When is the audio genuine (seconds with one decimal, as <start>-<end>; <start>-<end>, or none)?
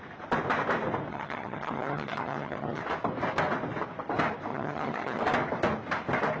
0.0-1.1; 2.8-4.5; 5.2-6.4